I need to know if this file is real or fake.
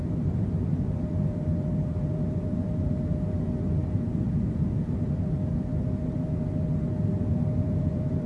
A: fake